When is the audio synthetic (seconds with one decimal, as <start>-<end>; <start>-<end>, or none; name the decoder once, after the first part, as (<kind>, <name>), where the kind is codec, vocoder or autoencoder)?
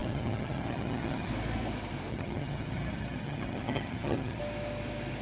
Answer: 0.0-1.3 (vocoder, HiFi-GAN); 2.1-4.4